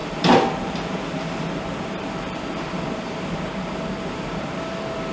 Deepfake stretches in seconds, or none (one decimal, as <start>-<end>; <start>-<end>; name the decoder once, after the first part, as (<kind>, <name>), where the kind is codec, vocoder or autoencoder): 0.0-5.1 (vocoder, BigVGAN v2)